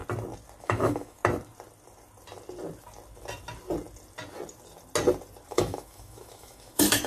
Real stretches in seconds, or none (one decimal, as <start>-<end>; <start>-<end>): 0.0-0.6; 1.2-5.5